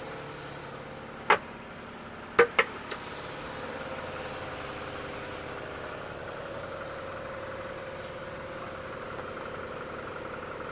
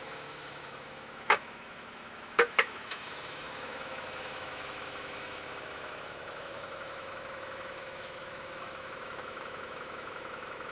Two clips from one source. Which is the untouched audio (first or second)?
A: first